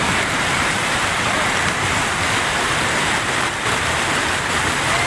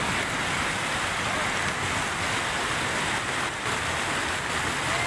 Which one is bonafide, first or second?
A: second